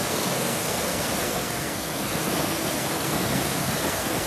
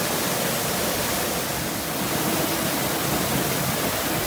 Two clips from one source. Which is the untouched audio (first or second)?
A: second